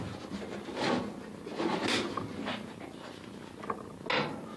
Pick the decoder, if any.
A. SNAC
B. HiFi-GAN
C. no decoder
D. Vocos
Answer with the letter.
C